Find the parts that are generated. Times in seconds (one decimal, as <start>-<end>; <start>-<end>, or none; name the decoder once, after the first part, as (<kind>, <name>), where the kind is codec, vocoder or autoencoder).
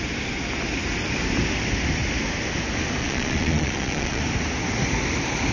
3.0-4.2 (vocoder, Vocos)